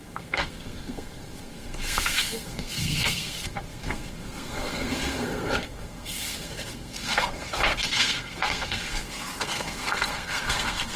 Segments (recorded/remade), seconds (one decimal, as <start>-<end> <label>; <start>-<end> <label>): 0.0-11.0 remade